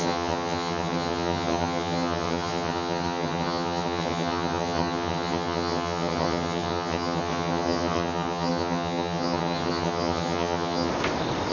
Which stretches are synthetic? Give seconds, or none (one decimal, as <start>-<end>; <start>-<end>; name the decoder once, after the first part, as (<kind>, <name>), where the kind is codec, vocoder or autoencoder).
0.0-10.9 (vocoder, HiFi-GAN)